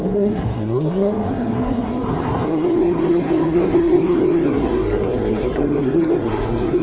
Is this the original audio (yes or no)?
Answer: no